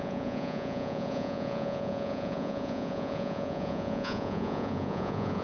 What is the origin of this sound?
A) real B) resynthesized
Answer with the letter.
B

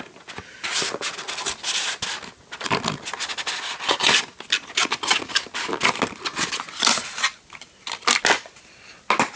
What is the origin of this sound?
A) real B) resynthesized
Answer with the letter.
A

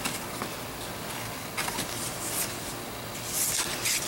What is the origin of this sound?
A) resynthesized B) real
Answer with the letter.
B